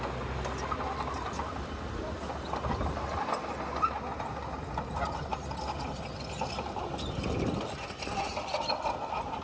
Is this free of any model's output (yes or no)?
yes